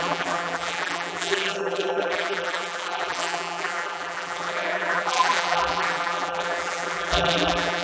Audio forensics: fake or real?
fake